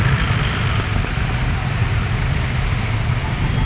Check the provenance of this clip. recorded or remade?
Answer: recorded